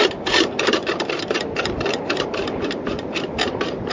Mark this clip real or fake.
fake